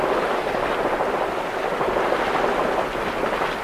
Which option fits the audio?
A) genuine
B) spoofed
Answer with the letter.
A